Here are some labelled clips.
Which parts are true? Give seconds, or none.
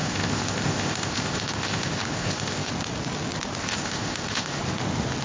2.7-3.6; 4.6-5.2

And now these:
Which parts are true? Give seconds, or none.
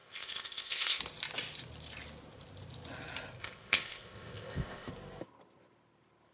1.0-3.4; 4.9-6.3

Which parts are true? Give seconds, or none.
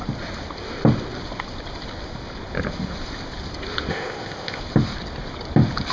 0.0-3.9; 4.6-5.9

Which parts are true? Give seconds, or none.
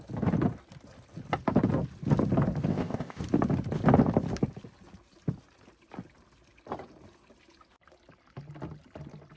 0.0-2.7; 3.2-9.4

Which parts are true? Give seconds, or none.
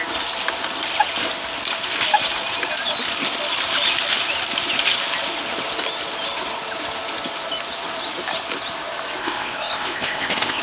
0.0-9.2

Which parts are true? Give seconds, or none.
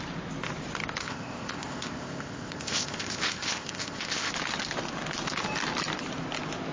0.0-1.0; 4.3-6.7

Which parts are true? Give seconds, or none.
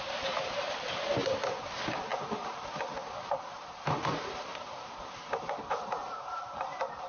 0.0-7.1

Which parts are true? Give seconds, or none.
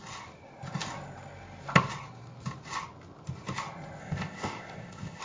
0.0-4.0